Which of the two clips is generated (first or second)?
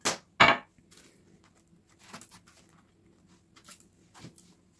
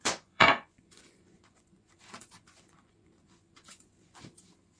second